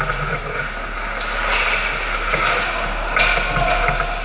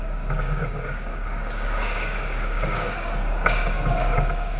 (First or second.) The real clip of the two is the first